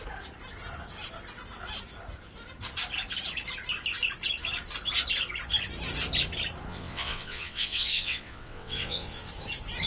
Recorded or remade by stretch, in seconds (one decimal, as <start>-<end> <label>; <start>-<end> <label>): 0.0-6.7 recorded; 6.7-9.3 remade; 9.3-9.9 recorded

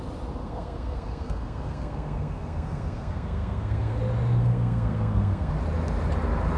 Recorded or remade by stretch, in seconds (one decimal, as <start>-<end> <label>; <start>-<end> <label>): 0.0-0.4 recorded; 0.4-4.0 remade; 4.0-4.4 recorded; 4.4-5.5 remade; 5.5-6.6 recorded

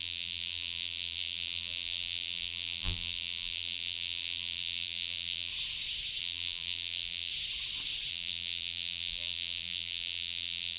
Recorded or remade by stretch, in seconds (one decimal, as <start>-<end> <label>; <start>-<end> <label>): 0.0-5.5 remade; 5.5-6.2 recorded; 6.2-7.3 remade; 7.3-8.1 recorded; 8.1-10.8 remade

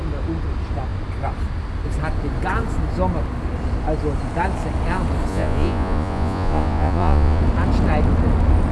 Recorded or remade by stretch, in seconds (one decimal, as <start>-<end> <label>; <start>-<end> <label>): 0.0-5.3 recorded; 5.3-7.4 remade; 7.4-8.7 recorded

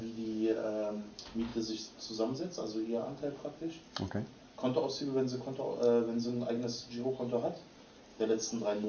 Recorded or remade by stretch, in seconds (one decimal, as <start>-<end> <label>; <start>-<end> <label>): 0.0-1.0 remade; 1.0-8.1 recorded; 8.1-8.9 remade

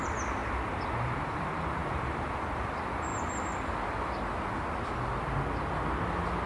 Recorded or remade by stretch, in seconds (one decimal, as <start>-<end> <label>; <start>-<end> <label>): 0.0-0.4 remade; 0.4-1.2 recorded; 1.2-3.1 remade; 3.1-6.5 recorded